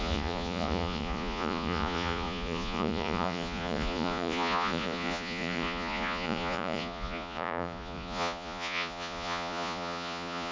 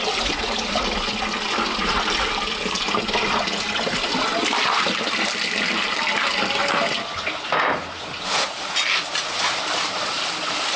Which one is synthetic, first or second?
first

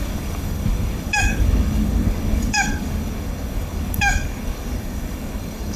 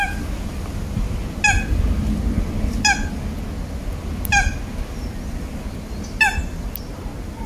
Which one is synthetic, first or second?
first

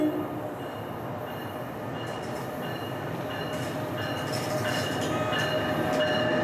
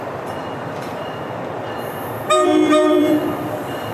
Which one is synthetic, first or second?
second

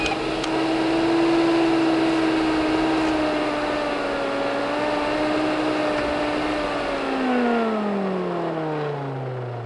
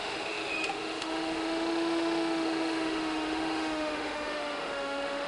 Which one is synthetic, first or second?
second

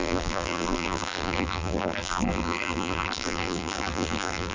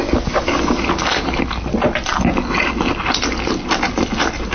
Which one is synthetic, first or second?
first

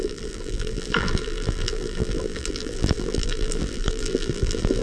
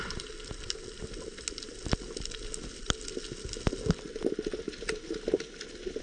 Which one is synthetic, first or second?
first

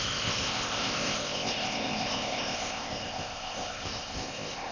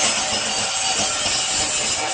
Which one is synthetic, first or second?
first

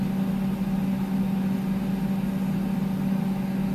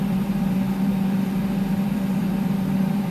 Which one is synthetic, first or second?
second